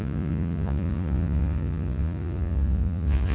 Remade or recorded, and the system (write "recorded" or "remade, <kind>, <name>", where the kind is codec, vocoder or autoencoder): remade, vocoder, Vocos